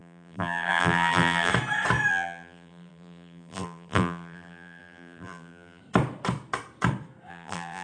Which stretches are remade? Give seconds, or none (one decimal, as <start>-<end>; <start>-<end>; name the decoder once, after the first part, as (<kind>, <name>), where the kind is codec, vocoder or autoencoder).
0.0-1.5 (vocoder, BigVGAN v2); 2.1-5.8; 7.3-7.8